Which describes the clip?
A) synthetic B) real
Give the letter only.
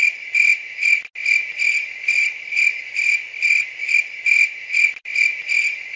B